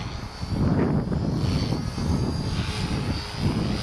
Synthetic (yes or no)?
no